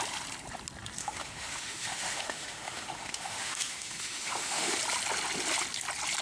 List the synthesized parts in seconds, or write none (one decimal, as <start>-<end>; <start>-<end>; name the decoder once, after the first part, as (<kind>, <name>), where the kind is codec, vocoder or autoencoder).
1.0-4.7 (autoencoder, DAC-VAE)